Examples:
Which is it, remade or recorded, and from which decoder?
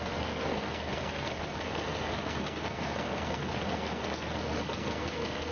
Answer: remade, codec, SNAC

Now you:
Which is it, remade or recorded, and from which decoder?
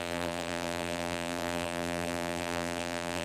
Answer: remade, vocoder, BigVGAN v2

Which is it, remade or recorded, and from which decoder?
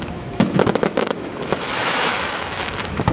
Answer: remade, autoencoder, DAC-VAE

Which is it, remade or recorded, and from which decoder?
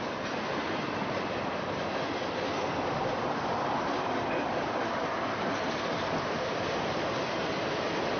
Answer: remade, vocoder, BigVGAN v2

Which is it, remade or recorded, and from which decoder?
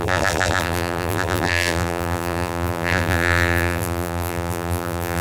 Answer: remade, vocoder, BigVGAN v2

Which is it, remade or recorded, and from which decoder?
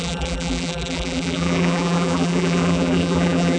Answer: remade, vocoder, BigVGAN v2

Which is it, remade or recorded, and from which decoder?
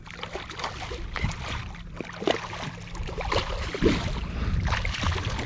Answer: recorded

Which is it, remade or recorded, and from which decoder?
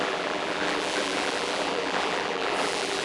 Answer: remade, vocoder, BigVGAN v2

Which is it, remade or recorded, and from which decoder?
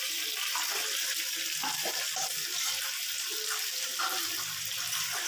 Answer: recorded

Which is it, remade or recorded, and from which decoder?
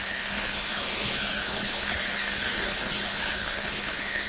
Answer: remade, codec, HILCodec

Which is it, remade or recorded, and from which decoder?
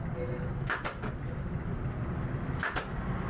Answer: recorded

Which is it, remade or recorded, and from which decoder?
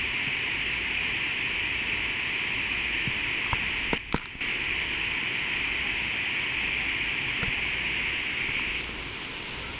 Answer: recorded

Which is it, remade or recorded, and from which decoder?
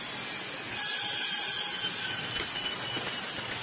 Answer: recorded